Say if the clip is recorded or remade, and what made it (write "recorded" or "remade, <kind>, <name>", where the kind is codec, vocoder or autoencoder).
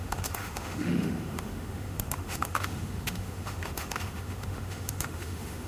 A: remade, autoencoder, DAC-VAE